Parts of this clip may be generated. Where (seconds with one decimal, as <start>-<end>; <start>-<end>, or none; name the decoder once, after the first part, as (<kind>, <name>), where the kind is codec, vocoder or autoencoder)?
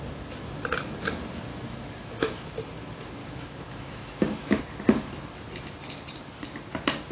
1.5-2.5 (autoencoder, DAC-VAE); 3.2-4.6